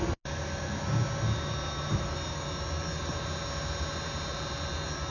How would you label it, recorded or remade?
recorded